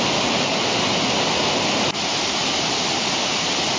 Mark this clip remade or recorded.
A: recorded